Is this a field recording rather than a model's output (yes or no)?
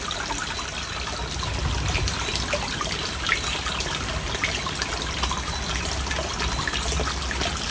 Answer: yes